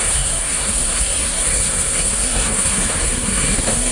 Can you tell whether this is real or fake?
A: fake